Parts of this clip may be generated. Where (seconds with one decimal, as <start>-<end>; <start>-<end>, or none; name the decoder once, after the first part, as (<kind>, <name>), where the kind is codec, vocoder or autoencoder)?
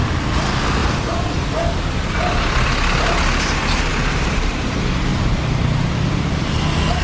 5.1-6.4 (vocoder, BigVGAN v2)